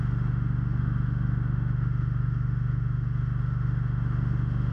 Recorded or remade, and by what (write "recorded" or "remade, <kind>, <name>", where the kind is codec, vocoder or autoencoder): remade, autoencoder, DAC-VAE